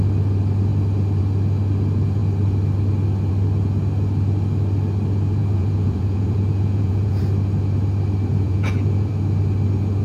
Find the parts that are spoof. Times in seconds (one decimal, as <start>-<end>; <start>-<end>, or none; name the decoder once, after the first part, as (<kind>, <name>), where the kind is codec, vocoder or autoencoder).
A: 5.4-7.2 (vocoder, Vocos); 8.3-9.1